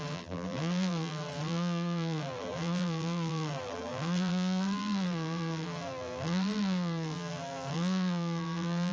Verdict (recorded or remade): remade